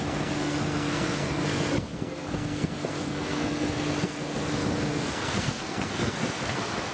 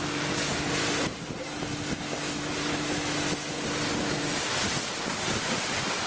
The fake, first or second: first